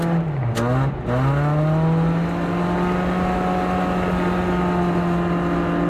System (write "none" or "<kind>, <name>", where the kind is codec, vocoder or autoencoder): none